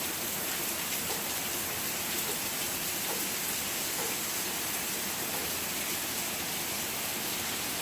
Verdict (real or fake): real